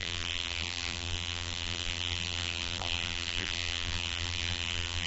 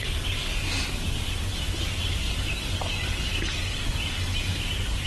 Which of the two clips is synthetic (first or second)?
first